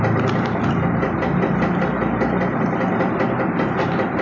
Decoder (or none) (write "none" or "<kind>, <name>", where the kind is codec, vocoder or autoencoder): none